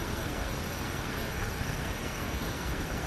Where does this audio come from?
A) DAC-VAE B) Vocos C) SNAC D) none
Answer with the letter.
C